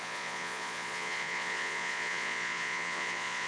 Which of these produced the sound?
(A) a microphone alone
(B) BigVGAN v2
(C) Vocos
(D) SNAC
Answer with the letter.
C